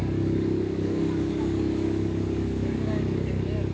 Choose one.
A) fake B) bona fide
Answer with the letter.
A